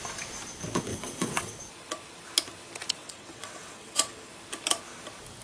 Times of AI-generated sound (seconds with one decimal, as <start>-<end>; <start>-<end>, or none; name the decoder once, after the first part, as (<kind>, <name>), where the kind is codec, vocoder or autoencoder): 0.9-1.5 (vocoder, WaveNeXt); 3.0-4.3